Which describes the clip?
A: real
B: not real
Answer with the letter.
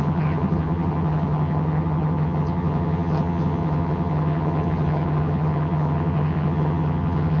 B